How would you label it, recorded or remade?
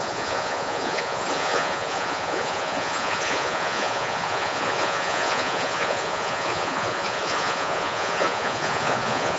remade